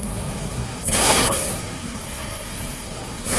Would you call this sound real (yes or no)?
no